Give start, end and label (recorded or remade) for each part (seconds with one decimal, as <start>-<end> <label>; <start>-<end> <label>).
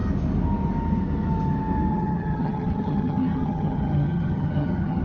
0.0-1.9 recorded; 1.9-5.0 remade